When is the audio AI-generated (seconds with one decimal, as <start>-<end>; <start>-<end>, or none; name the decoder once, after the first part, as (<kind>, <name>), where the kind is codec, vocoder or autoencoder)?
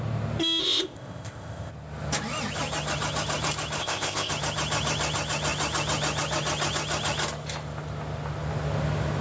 0.6-1.7 (codec, ZipCodec); 3.8-4.3